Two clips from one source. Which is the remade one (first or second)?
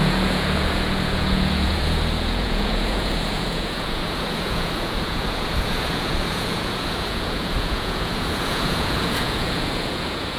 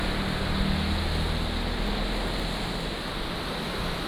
first